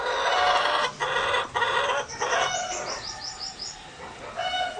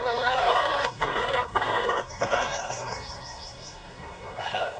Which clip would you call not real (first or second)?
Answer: second